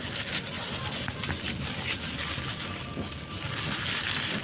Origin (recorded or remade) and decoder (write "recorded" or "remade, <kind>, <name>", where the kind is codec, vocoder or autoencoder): recorded